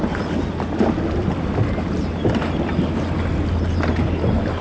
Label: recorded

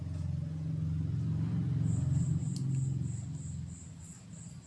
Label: recorded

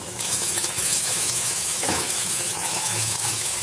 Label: remade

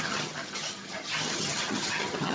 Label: remade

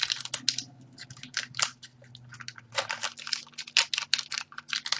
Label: recorded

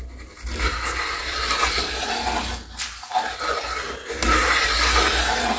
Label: recorded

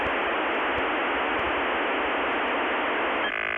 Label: recorded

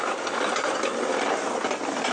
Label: recorded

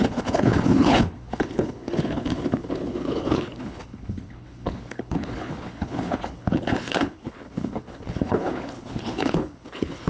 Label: remade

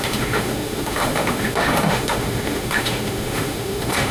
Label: remade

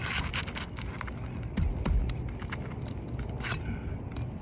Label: recorded